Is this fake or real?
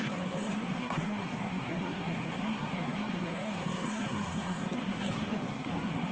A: fake